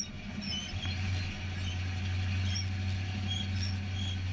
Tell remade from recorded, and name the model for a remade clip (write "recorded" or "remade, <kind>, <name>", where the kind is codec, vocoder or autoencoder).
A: recorded